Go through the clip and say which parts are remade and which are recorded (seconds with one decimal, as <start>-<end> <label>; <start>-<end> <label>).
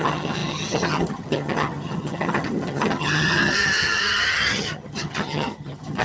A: 0.0-6.0 remade